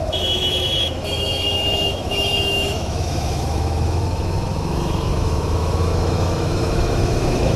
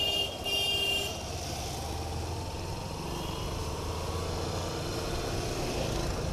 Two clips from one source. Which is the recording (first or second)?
second